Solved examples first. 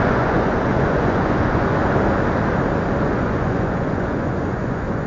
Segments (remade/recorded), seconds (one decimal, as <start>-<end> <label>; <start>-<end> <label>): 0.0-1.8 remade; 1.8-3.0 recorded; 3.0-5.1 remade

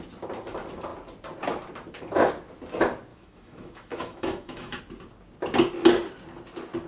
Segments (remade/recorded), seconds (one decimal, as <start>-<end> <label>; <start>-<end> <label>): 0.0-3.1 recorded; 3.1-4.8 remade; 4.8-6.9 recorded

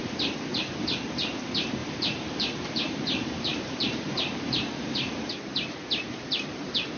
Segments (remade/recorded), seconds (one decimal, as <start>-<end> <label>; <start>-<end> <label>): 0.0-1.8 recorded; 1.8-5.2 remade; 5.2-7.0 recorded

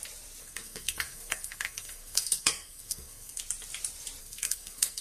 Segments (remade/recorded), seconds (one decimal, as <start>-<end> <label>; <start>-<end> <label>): 0.0-0.4 recorded; 0.4-3.4 remade; 3.4-4.2 recorded; 4.2-5.0 remade

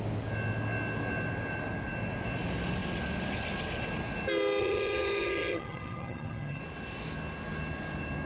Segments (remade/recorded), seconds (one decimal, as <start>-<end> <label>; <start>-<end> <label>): 0.0-4.6 recorded; 4.6-6.6 remade; 6.6-8.3 recorded

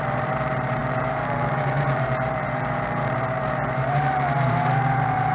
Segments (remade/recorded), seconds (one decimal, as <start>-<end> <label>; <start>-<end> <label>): 0.0-5.3 remade

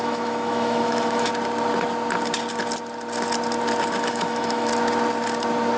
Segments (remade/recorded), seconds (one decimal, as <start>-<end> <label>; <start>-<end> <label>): 0.0-1.3 remade; 1.3-4.0 recorded; 4.0-4.7 remade; 4.7-5.8 recorded

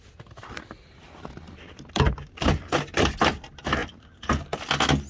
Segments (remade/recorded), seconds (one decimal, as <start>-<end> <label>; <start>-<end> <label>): 0.0-5.1 recorded